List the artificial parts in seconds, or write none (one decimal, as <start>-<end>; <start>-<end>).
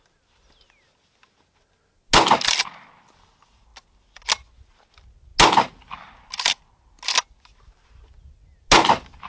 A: none